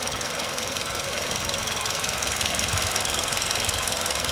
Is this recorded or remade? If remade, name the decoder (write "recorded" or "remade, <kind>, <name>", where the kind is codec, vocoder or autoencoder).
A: remade, codec, SNAC